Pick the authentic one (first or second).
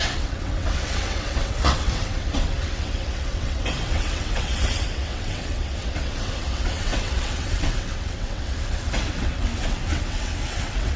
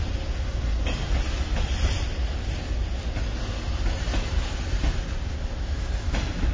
second